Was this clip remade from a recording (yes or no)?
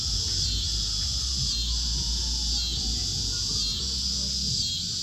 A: no